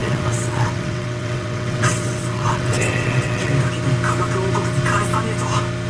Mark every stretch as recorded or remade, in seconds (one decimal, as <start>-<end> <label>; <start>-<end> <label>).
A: 0.0-3.5 remade; 3.5-5.9 recorded